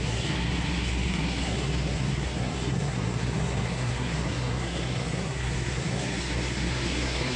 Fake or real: fake